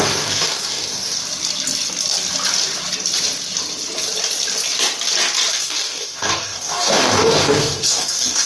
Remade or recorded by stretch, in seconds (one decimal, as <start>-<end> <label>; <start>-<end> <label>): 0.0-1.2 remade; 1.2-5.5 recorded; 5.5-8.5 remade